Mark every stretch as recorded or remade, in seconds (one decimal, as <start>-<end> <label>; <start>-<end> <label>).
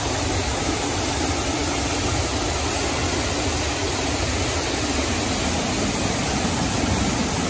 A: 0.0-7.5 recorded